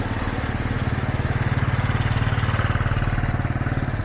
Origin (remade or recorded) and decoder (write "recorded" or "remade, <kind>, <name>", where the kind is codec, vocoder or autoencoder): recorded